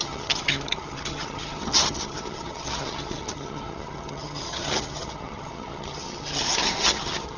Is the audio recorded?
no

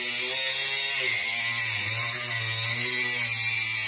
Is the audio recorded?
yes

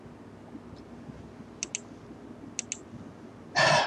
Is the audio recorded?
yes